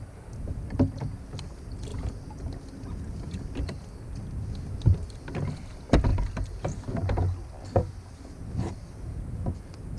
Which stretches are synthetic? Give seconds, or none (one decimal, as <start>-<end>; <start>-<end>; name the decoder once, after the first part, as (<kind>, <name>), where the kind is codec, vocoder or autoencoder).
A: none